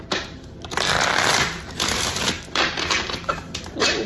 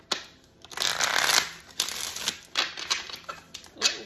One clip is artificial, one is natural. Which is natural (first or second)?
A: second